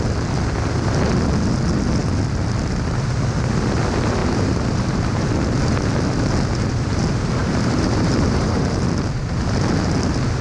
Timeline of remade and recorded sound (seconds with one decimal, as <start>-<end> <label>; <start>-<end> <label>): 0.0-4.2 recorded; 4.2-5.2 remade; 5.2-7.4 recorded; 7.4-8.8 remade; 8.8-10.4 recorded